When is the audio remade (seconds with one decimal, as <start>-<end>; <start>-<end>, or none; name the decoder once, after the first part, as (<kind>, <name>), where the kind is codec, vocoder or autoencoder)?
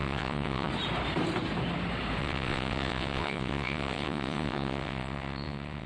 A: 0.0-0.7 (vocoder, WaveNeXt); 2.2-5.9